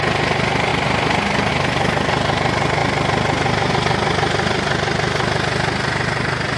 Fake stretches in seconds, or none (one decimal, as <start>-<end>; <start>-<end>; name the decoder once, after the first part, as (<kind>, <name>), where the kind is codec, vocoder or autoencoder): none